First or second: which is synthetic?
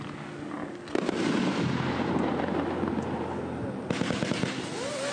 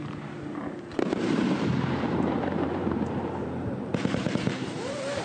second